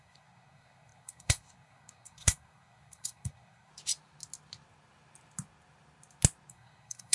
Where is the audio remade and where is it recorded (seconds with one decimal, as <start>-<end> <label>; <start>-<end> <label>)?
0.0-3.7 remade; 3.7-6.5 recorded; 6.5-7.1 remade